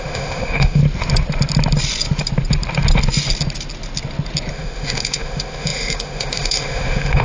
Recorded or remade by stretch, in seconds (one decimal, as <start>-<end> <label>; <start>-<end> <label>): 0.0-0.8 remade; 0.8-4.5 recorded; 4.5-7.2 remade